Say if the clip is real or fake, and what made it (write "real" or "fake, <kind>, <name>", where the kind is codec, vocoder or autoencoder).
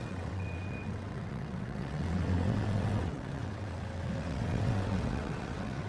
fake, vocoder, WaveNeXt